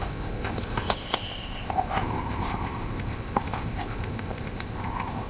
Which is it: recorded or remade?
remade